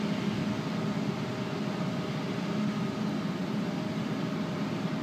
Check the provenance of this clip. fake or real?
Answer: real